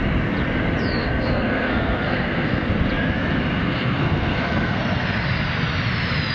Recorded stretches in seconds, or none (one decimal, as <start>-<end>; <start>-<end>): 0.0-1.0; 2.7-3.6; 4.8-6.3